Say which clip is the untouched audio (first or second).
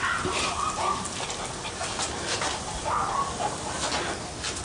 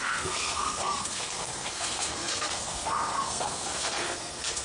first